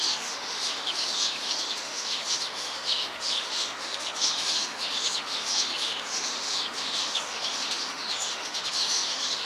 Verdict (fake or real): fake